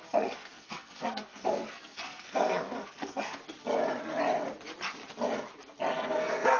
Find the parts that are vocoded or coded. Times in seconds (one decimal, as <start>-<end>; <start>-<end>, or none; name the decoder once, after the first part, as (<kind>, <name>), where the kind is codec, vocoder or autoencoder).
0.0-3.4 (codec, SNAC); 5.9-6.6